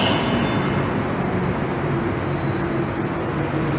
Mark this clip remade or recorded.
recorded